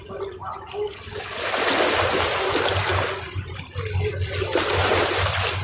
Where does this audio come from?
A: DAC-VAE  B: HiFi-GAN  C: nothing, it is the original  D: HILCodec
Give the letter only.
C